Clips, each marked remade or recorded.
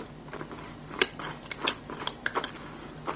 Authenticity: recorded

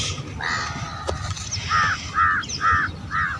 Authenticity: recorded